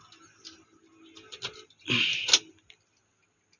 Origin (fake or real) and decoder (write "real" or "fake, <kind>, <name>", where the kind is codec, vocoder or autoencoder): real